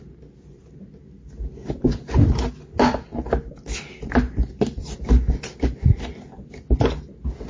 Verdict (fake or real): real